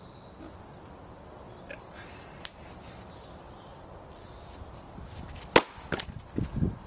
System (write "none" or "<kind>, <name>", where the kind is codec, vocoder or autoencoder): none